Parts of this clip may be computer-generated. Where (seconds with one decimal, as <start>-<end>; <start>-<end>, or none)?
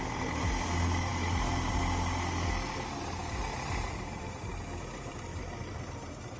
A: 3.2-4.5